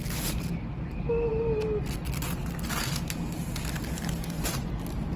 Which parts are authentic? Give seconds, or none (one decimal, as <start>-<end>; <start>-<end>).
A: 0.0-5.2